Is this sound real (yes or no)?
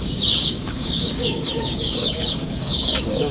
no